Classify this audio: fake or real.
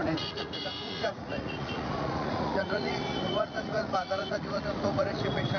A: fake